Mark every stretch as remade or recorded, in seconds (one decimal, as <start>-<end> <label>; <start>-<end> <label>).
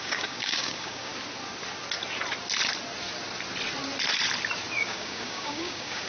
0.0-1.1 remade; 1.1-4.8 recorded; 4.8-6.1 remade